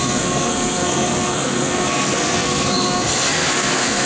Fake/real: fake